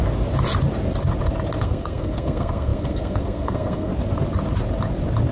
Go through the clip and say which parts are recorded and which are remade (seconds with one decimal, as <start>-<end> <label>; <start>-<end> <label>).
0.0-1.6 recorded; 1.6-3.9 remade; 3.9-5.3 recorded